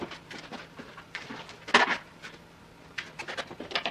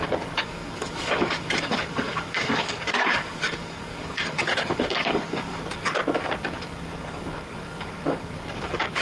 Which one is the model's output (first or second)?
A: second